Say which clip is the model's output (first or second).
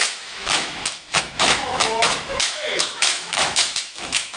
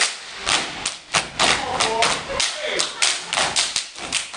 first